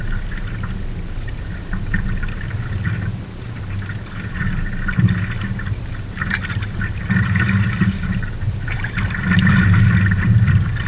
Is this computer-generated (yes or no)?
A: no